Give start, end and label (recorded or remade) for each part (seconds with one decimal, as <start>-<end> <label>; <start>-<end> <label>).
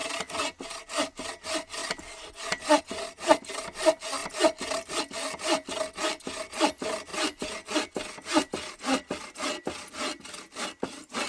0.0-1.3 remade; 1.3-4.2 recorded; 4.2-5.0 remade; 5.0-11.3 recorded